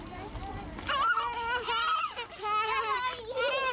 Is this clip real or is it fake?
real